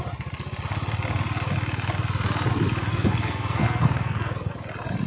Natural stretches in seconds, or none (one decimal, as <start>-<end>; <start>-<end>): 0.0-2.9; 4.5-5.1